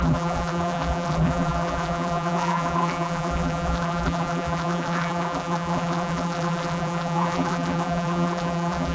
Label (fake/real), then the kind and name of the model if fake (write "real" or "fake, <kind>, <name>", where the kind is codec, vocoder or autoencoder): fake, vocoder, BigVGAN v2